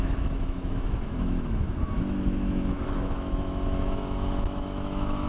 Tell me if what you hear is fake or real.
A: fake